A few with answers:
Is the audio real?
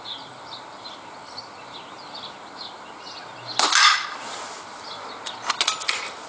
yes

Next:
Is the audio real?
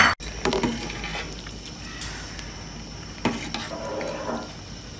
yes